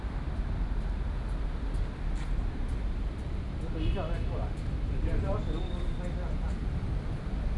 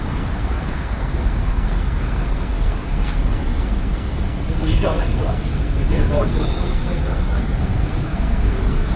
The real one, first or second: first